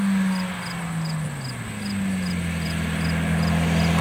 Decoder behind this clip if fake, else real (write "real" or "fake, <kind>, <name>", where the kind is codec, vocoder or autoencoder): real